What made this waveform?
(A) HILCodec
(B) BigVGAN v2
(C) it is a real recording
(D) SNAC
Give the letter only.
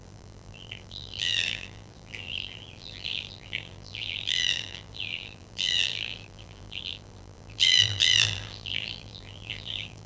B